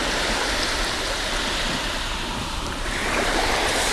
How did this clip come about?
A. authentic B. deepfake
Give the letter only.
B